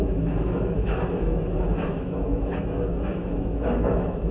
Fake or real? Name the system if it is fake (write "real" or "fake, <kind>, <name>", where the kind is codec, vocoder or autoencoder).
fake, autoencoder, DAC-VAE